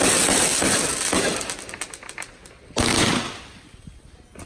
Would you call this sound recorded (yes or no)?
yes